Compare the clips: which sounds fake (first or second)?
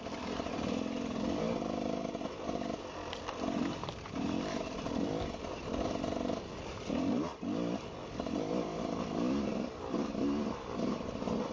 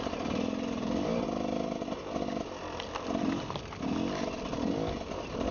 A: first